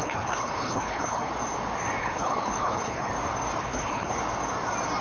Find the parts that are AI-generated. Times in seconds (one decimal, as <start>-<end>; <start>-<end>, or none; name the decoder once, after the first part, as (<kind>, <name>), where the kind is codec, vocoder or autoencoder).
0.0-1.3 (codec, HILCodec); 2.0-3.1; 3.6-4.1